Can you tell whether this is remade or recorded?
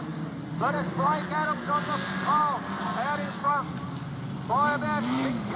recorded